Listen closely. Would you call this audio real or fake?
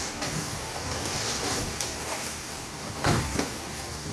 fake